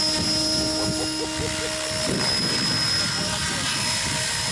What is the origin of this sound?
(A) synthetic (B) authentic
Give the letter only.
B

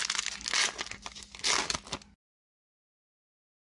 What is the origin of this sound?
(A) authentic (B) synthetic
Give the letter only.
A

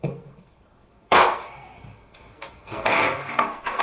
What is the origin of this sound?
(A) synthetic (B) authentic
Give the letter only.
A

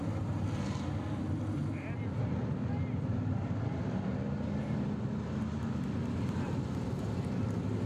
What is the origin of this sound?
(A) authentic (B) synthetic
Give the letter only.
A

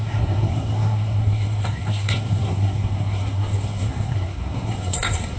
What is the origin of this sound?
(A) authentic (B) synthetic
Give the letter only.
B